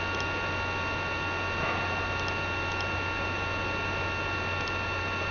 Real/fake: real